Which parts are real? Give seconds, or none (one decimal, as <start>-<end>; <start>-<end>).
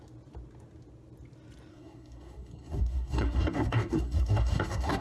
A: 0.0-1.7